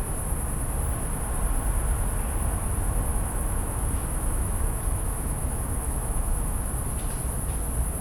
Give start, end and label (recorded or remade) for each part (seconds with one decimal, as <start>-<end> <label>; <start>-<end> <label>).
0.0-3.1 recorded; 3.1-6.7 remade; 6.7-8.0 recorded